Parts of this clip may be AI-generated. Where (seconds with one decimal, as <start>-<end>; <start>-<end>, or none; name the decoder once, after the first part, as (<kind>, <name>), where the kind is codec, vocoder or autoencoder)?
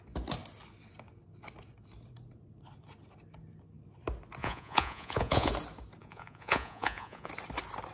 4.4-5.5 (vocoder, Vocos); 6.0-7.3